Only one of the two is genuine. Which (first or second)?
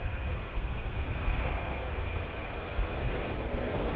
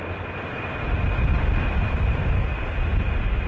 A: second